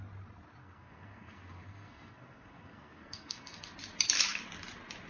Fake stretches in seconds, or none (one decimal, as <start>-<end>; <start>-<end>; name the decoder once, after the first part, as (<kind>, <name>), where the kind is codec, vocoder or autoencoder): 0.6-3.7 (codec, SNAC)

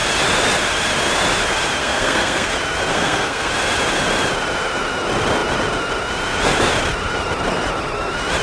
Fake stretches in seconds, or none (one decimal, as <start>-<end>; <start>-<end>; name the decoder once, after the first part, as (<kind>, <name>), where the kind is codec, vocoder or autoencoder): 1.8-2.5 (codec, SNAC); 2.9-3.5

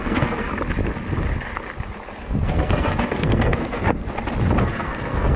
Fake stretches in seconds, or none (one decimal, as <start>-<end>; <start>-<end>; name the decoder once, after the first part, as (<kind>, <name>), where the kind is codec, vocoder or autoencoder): 0.0-0.5 (codec, SNAC); 2.2-4.0; 4.6-5.4